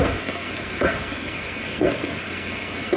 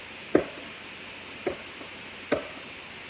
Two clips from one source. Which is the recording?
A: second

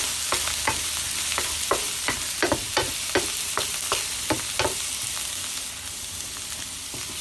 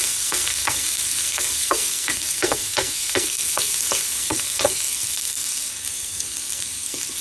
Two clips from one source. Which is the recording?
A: first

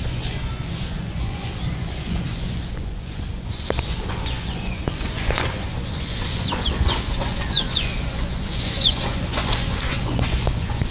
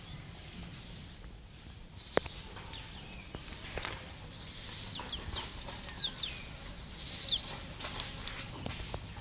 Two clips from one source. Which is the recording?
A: second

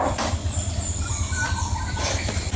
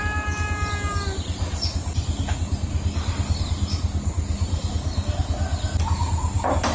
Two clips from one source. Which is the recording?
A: second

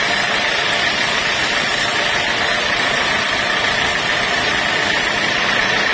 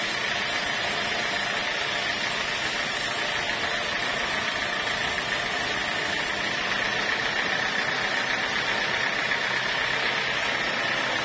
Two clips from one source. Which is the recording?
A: second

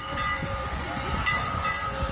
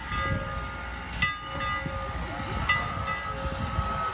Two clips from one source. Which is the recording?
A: second